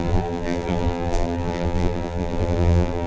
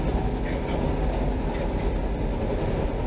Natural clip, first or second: second